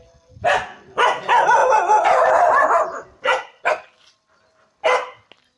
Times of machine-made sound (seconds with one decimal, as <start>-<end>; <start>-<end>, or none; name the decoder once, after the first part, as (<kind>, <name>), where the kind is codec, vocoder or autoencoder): 1.6-2.3 (vocoder, BigVGAN v2)